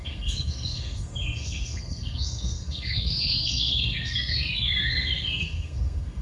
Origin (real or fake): fake